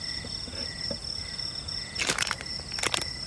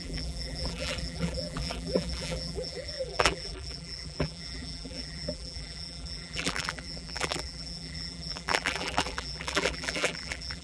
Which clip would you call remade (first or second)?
second